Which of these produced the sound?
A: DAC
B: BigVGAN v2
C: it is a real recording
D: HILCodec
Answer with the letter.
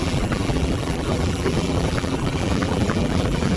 B